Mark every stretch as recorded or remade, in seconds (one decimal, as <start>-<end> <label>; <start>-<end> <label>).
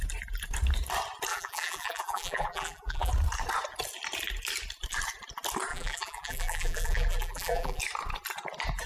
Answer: 0.0-1.3 recorded; 1.3-3.1 remade; 3.1-5.7 recorded; 5.7-7.8 remade; 7.8-8.9 recorded